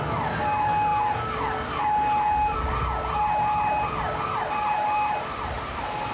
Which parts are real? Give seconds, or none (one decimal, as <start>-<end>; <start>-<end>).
0.0-6.1